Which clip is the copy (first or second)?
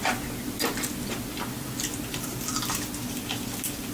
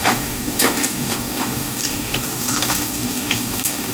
second